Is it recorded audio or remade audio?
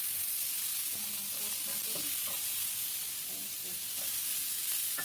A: recorded